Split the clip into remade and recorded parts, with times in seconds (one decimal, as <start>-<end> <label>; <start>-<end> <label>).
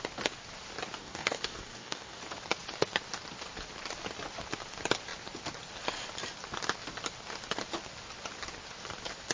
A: 0.0-1.0 recorded; 1.0-2.2 remade; 2.2-9.3 recorded